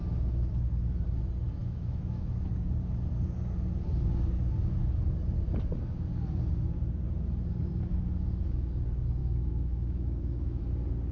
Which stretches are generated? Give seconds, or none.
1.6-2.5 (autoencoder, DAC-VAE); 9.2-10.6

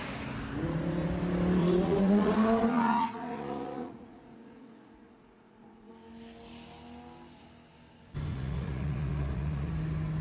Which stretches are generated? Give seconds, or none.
1.6-5.9 (vocoder, Vocos); 8.3-9.7

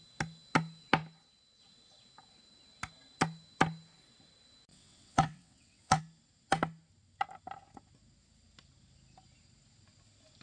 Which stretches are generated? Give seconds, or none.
4.7-6.0 (vocoder, WaveNeXt)

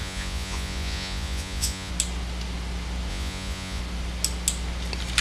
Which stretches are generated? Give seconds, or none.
0.0-1.9 (vocoder, Vocos); 3.1-3.8

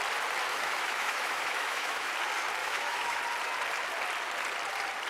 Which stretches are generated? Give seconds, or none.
0.5-2.1 (autoencoder, DAC-VAE); 2.6-3.2

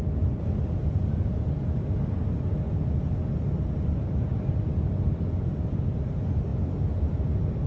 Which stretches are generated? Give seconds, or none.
none